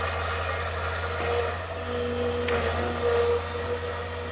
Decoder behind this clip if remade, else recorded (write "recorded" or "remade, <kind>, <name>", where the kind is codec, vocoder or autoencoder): recorded